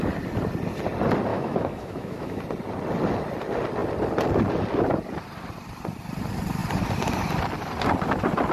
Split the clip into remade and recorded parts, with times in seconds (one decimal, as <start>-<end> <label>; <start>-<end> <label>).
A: 0.0-1.3 recorded; 1.3-2.4 remade; 2.4-8.5 recorded